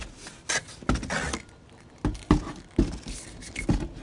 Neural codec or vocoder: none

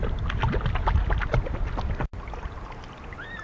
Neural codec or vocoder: none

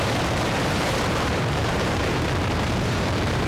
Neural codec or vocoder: vocoder, BigVGAN v2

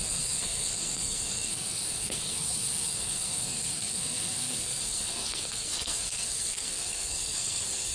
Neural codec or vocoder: codec, SNAC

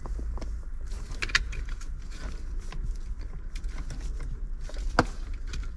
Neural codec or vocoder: none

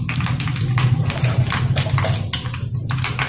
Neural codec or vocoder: none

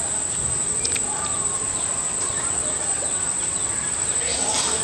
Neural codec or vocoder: vocoder, BigVGAN v2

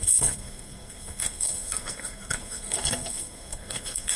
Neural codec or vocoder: codec, SNAC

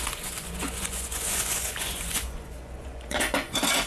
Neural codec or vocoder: vocoder, Vocos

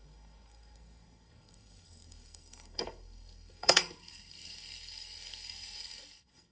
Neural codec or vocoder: codec, SNAC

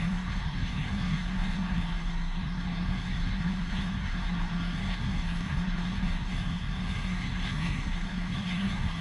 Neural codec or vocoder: codec, SNAC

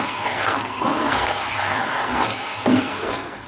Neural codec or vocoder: codec, SNAC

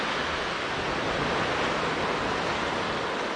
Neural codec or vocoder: none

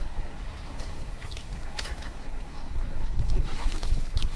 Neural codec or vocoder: codec, SNAC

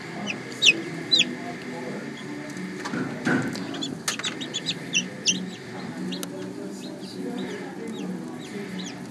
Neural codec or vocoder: none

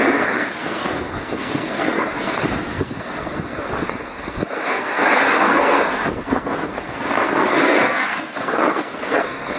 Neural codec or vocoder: codec, SNAC